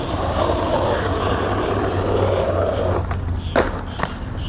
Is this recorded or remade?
recorded